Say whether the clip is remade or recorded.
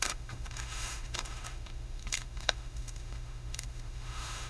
remade